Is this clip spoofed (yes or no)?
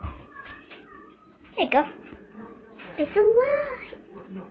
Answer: yes